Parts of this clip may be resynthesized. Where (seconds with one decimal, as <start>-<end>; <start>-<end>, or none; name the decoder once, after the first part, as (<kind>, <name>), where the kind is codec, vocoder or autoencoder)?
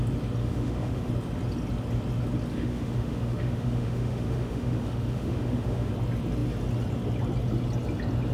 0.4-1.1 (autoencoder, DAC-VAE); 2.5-5.9